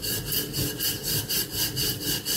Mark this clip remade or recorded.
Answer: recorded